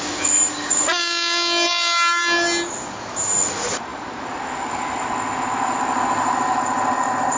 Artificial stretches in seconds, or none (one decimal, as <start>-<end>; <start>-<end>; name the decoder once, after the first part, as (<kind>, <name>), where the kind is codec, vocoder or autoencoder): none